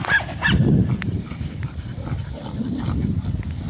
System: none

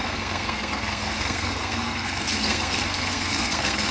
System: codec, SNAC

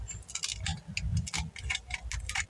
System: none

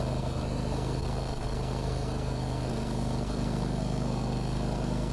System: codec, SNAC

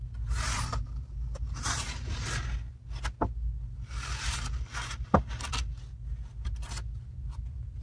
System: none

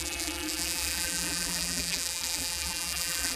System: vocoder, BigVGAN v2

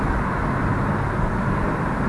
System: none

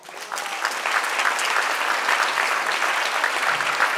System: none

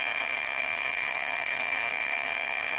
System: vocoder, HiFi-GAN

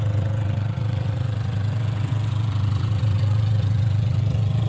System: vocoder, WaveNeXt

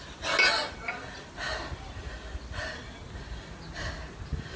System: none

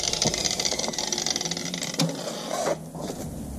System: none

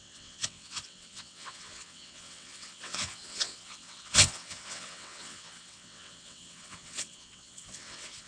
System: vocoder, WaveNeXt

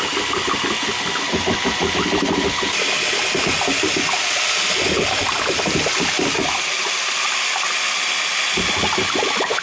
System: none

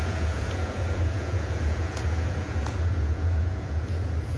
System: vocoder, Vocos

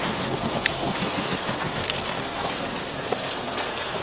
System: codec, SNAC